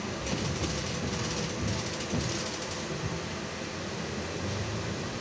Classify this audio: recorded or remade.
recorded